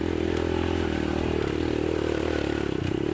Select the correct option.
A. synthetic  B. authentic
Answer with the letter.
B